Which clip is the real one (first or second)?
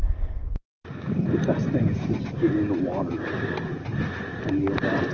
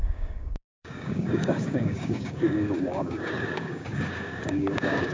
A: first